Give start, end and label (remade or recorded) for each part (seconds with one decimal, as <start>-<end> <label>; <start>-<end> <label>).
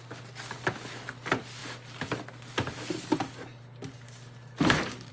0.0-5.1 recorded